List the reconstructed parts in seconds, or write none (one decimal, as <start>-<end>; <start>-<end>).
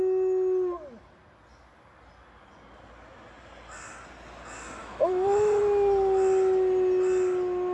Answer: 4.8-5.6